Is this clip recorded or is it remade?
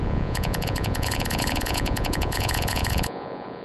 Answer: remade